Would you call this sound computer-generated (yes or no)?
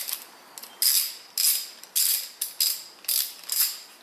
no